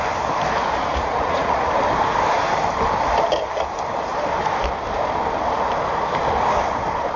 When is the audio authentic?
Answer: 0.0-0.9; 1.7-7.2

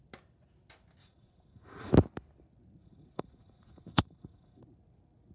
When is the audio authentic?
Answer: 0.0-1.0; 1.9-2.8; 4.6-5.3

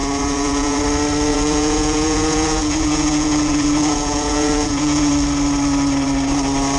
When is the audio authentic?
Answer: 0.8-1.3; 5.1-6.8